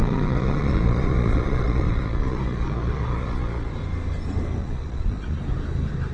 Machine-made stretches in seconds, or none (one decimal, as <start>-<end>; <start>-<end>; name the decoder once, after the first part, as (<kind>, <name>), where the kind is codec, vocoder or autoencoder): 0.0-3.7 (vocoder, Vocos); 4.6-5.4